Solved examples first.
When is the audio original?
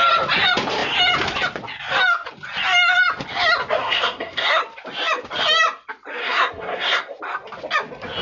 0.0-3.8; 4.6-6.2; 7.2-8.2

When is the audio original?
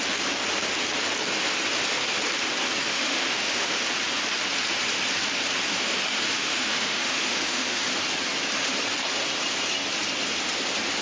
0.0-2.9; 3.9-6.3; 7.8-11.0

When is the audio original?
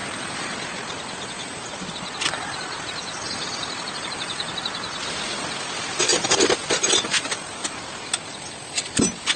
0.0-9.4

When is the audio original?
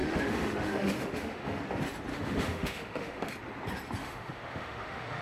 1.6-2.1; 3.3-4.0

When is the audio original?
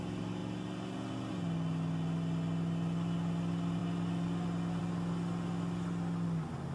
0.0-6.7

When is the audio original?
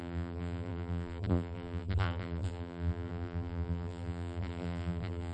none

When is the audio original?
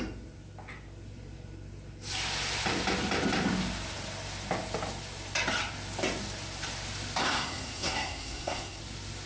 0.0-7.2; 8.8-9.3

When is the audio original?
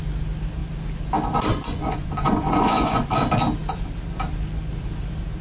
0.0-1.5; 3.1-5.4